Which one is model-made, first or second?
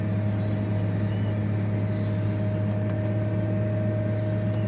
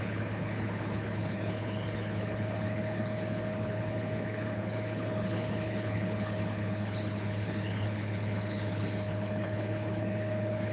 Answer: second